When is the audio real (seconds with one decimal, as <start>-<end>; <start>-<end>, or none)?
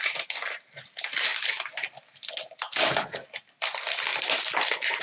0.0-5.0